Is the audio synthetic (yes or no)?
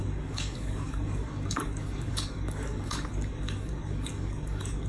yes